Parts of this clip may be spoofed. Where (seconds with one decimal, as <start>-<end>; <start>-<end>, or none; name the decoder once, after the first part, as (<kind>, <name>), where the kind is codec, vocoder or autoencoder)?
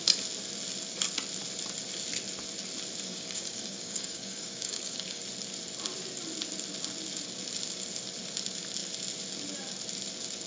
3.1-5.2 (codec, DAC)